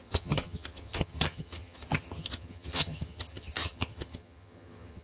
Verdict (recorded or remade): remade